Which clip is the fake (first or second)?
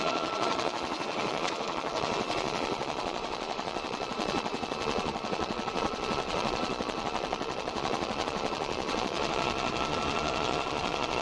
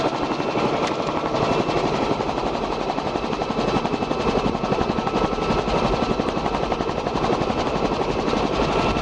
first